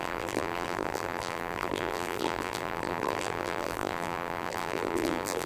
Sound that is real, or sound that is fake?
fake